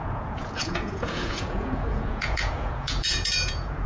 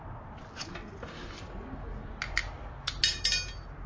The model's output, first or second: first